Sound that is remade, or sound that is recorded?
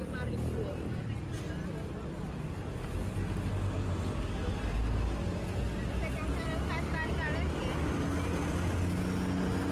recorded